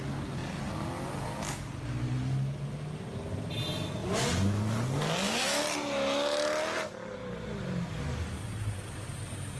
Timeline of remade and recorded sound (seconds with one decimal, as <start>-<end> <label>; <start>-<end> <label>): 0.0-9.6 recorded